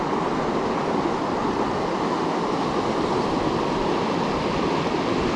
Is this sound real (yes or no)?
yes